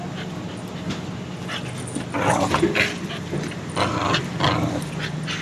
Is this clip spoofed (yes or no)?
no